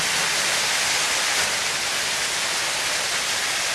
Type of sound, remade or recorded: recorded